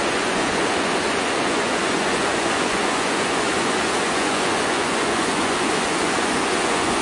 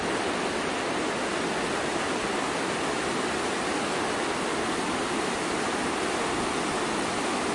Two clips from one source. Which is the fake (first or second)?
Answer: first